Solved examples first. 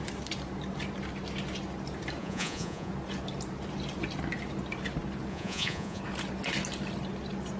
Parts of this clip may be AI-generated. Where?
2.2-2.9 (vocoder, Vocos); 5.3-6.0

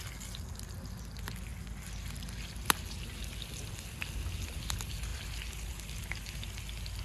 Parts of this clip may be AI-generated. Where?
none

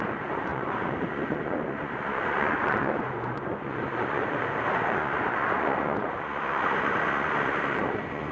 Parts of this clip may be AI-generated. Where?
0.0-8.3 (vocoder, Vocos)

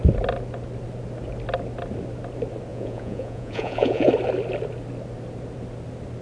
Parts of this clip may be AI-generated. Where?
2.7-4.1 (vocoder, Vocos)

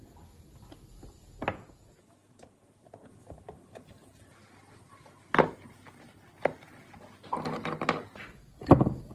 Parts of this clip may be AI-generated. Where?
1.5-3.1 (vocoder, Vocos)